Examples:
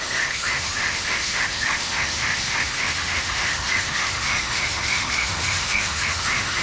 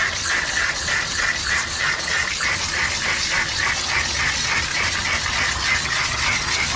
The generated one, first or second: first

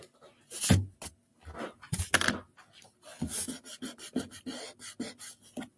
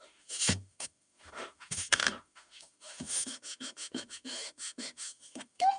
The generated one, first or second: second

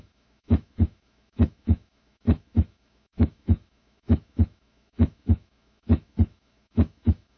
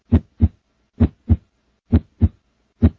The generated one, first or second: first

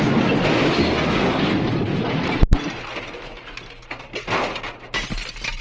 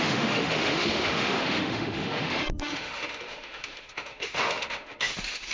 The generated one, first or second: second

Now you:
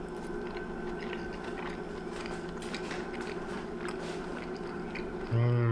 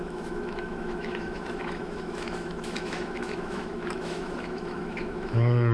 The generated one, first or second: second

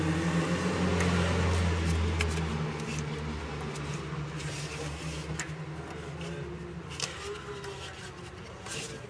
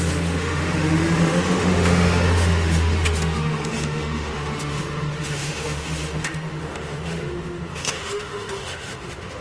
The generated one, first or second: second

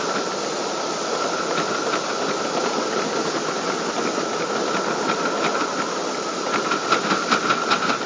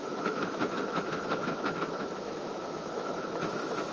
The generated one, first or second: second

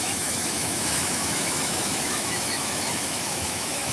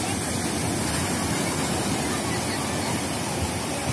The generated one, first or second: first